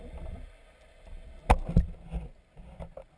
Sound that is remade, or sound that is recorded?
recorded